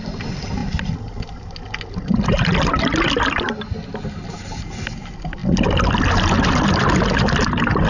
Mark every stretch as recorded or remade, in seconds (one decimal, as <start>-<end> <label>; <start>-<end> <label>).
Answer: 0.0-7.9 recorded